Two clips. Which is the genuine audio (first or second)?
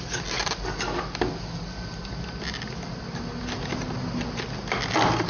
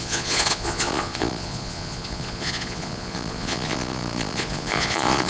first